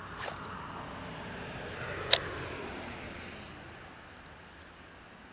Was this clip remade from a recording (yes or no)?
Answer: no